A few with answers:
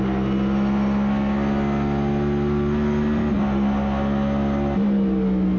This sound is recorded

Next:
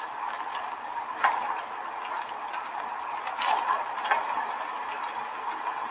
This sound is recorded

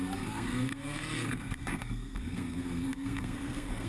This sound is remade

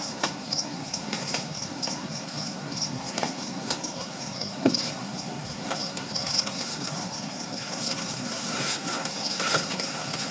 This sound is remade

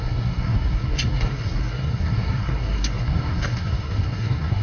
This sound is remade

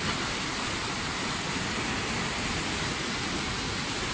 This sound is recorded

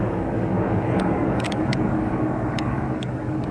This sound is remade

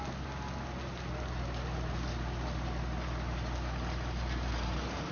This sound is recorded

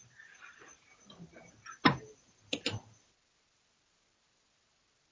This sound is recorded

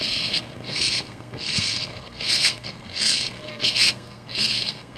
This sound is remade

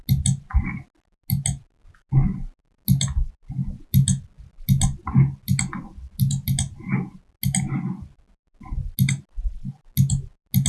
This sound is recorded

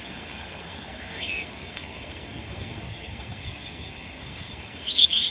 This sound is remade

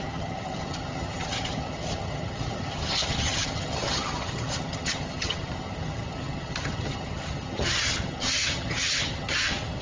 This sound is remade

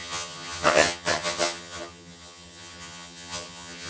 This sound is remade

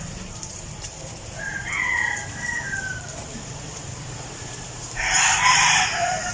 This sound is remade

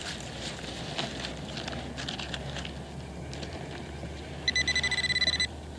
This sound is recorded